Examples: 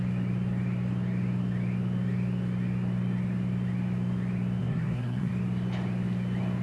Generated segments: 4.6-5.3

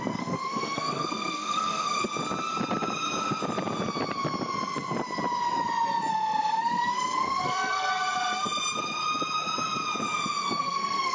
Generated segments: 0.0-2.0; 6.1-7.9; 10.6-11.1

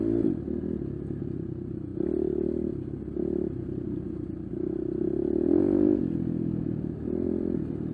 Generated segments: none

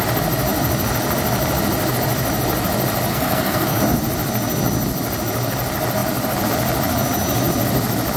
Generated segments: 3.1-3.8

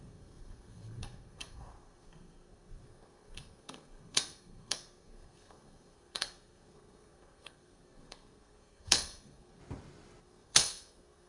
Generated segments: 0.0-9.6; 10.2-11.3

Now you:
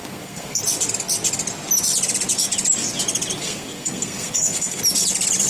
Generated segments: 0.0-0.6; 3.4-4.8

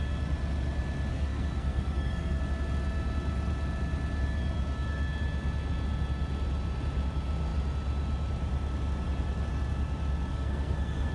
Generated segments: 1.1-2.4; 10.3-11.1

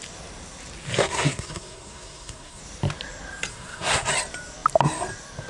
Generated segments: 1.0-2.6; 3.5-4.1